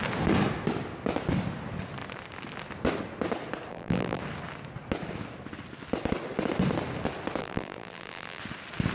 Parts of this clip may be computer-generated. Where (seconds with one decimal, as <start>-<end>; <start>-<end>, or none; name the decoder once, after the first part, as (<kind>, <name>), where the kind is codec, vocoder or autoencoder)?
3.7-4.2 (vocoder, BigVGAN v2); 7.4-8.4